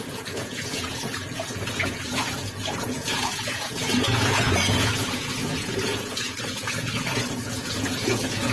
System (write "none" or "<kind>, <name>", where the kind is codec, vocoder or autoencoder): vocoder, Vocos